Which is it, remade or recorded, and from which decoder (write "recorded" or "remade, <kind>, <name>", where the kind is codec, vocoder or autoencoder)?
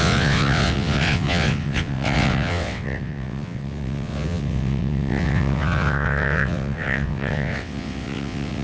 remade, vocoder, WaveNeXt